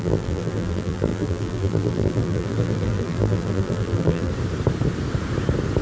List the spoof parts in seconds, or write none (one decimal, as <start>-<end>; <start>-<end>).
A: 0.0-4.3